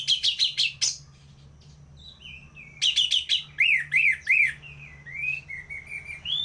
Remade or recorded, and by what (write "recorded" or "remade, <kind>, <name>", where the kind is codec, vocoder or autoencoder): recorded